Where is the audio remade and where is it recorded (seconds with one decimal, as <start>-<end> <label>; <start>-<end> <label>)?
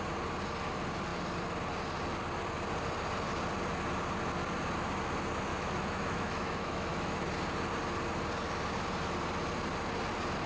0.0-5.5 recorded; 5.5-7.3 remade; 7.3-10.5 recorded